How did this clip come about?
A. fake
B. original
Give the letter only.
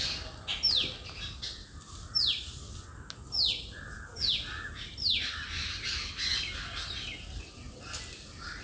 B